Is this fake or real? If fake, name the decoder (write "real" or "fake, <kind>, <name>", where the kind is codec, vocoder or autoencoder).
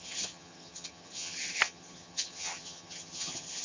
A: fake, vocoder, HiFi-GAN